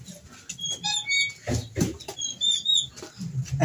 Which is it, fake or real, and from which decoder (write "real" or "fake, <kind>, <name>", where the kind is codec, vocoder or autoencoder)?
real